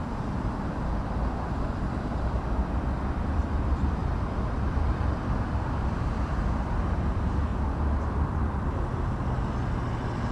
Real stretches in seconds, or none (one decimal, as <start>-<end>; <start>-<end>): 2.6-3.3; 4.0-4.7; 7.5-8.1